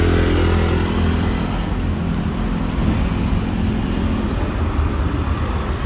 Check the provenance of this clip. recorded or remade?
recorded